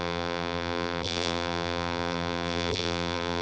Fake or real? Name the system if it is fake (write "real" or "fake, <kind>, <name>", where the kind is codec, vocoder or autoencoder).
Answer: fake, vocoder, BigVGAN v2